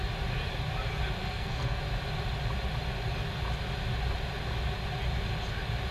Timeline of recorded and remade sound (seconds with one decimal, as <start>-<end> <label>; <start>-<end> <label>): 0.0-1.2 recorded; 1.2-1.8 remade; 1.8-5.9 recorded